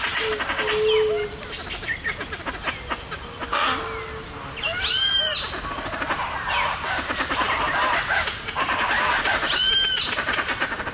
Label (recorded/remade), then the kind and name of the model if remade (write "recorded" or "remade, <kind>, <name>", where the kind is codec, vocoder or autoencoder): recorded